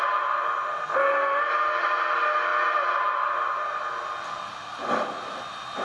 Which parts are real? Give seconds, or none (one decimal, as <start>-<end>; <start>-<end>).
0.0-5.8